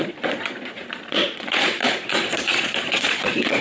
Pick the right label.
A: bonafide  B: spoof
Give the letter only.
B